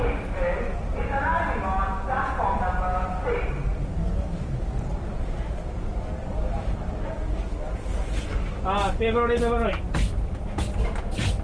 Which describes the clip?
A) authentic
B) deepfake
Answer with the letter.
A